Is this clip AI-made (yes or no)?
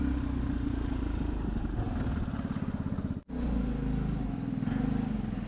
no